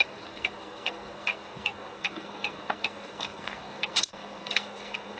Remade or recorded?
remade